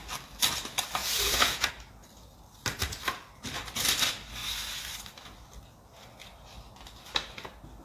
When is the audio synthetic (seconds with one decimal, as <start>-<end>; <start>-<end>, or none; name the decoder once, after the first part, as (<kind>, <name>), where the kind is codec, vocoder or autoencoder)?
1.0-1.7 (vocoder, Vocos)